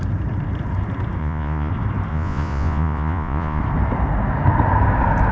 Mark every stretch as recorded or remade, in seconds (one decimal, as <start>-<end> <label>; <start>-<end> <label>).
0.0-1.2 recorded; 1.2-1.7 remade; 1.7-2.1 recorded; 2.1-3.6 remade; 3.6-5.3 recorded